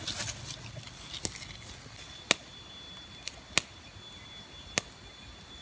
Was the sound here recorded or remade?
recorded